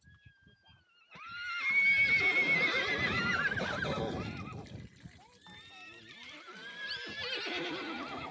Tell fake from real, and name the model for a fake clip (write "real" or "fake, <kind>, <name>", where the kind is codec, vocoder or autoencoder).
real